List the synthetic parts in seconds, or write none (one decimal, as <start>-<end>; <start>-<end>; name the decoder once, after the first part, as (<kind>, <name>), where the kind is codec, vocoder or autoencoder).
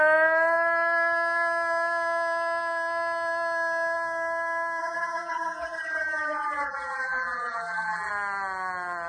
4.8-8.1 (vocoder, BigVGAN v2)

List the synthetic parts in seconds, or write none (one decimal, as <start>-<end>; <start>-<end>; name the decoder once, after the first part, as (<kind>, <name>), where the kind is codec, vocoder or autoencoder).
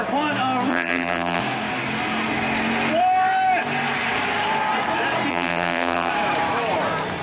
0.7-1.4 (vocoder, BigVGAN v2); 5.3-6.1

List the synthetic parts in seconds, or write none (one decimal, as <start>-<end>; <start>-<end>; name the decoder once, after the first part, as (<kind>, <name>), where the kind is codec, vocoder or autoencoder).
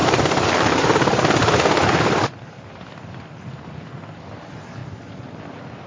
0.0-2.4 (vocoder, BigVGAN v2); 4.8-5.5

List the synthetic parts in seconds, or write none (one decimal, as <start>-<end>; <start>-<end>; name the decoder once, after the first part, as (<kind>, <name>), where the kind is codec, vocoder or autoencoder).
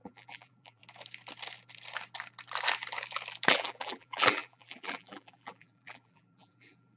0.0-0.8 (vocoder, BigVGAN v2); 3.5-7.0